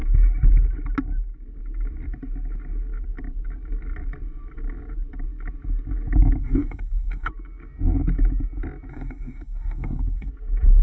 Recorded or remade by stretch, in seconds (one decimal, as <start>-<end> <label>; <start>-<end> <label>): 0.0-6.4 recorded; 6.4-7.3 remade; 7.3-8.9 recorded; 8.9-10.3 remade; 10.3-10.8 recorded